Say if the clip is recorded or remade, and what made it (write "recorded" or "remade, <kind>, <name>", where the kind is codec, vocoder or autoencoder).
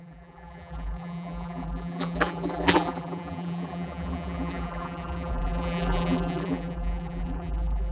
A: remade, vocoder, BigVGAN v2